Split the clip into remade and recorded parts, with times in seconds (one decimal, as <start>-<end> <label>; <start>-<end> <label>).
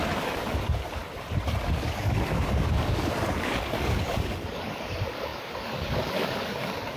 0.0-1.0 remade; 1.0-1.6 recorded; 1.6-7.0 remade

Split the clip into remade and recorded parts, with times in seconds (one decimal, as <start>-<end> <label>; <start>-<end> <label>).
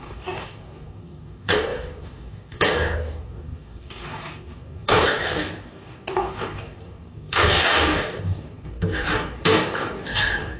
0.0-10.6 remade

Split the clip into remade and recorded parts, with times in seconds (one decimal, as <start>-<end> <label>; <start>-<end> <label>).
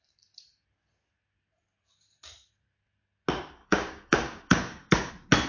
0.0-3.6 recorded; 3.6-5.1 remade; 5.1-5.5 recorded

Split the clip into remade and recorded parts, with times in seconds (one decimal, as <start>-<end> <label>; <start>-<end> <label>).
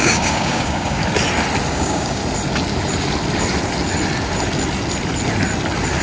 0.0-1.0 remade; 1.0-1.7 recorded; 1.7-2.2 remade; 2.2-6.0 recorded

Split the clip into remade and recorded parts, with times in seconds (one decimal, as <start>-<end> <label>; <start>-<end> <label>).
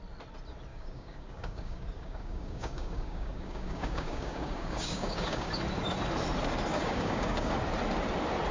0.0-0.7 recorded; 0.7-5.5 remade; 5.5-6.7 recorded; 6.7-7.5 remade; 7.5-8.5 recorded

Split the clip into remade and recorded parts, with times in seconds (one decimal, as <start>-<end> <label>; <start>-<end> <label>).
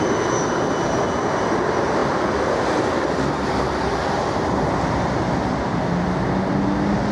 0.0-7.1 recorded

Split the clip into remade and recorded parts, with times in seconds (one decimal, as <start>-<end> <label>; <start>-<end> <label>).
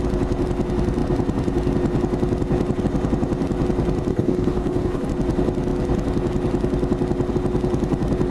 0.0-4.1 recorded; 4.1-5.1 remade; 5.1-8.3 recorded